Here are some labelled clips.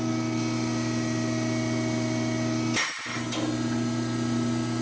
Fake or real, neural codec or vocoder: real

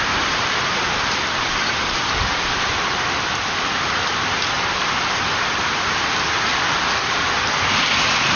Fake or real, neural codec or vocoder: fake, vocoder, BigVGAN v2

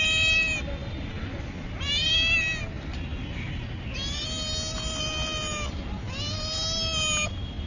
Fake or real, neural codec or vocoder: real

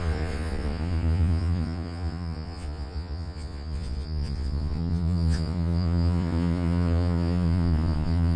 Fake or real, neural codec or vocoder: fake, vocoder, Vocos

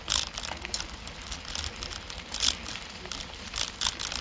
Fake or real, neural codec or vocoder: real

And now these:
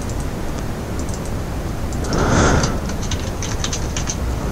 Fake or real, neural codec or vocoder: real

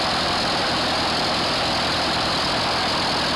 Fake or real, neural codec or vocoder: real